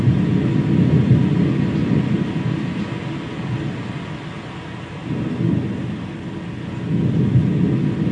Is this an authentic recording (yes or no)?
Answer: yes